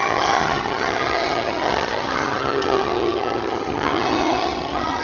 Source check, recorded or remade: remade